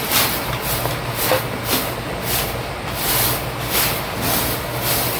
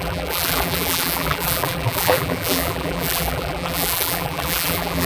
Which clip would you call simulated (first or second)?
second